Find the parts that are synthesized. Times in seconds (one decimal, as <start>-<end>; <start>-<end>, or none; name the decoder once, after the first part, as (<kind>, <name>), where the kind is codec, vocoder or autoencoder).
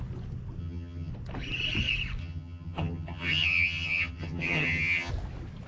0.6-1.1 (vocoder, HiFi-GAN); 2.2-5.1